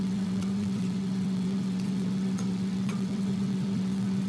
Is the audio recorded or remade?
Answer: remade